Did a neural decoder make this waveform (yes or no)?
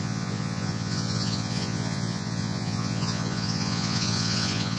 yes